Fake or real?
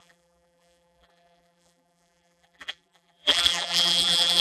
fake